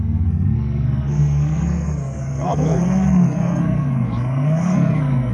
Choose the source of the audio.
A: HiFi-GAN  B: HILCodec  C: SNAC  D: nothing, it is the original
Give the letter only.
C